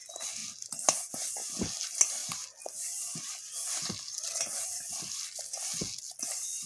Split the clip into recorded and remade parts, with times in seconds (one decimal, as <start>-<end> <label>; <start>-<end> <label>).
0.0-6.7 recorded